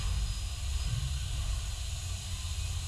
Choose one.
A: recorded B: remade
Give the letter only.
A